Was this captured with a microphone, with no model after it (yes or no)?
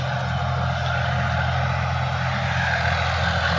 yes